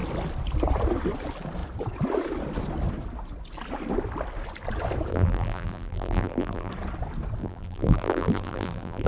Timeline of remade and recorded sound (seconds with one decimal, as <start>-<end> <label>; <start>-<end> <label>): 0.0-5.1 recorded; 5.1-6.7 remade; 6.7-7.4 recorded; 7.4-9.1 remade